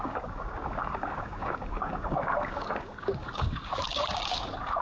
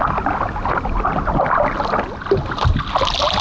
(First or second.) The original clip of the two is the second